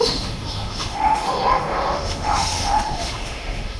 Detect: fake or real fake